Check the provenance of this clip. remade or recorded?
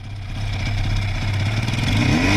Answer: recorded